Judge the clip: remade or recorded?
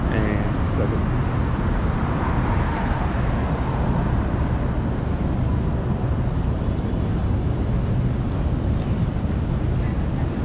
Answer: recorded